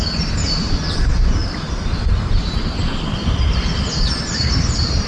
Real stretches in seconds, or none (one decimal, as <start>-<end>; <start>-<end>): 0.0-1.4; 2.4-3.1